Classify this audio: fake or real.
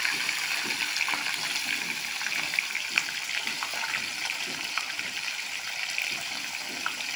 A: fake